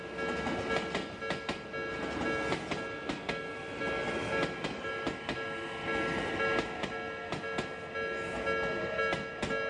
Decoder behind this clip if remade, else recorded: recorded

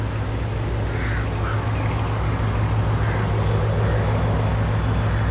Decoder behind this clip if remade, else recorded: recorded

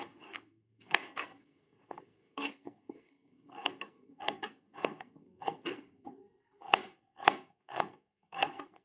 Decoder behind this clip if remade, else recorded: remade, codec, SNAC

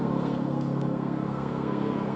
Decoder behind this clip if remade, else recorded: remade, codec, SNAC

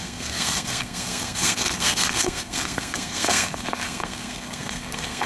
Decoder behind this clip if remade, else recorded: remade, codec, SNAC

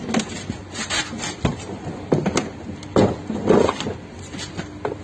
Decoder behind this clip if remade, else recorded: recorded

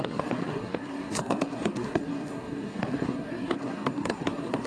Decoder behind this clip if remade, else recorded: remade, codec, SNAC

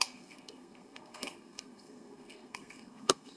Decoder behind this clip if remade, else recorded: remade, codec, SNAC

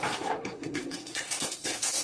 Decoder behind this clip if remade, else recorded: remade, codec, SNAC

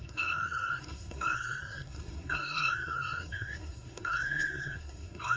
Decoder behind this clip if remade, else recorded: remade, codec, SNAC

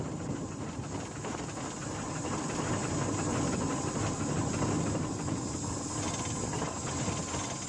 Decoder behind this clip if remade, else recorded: recorded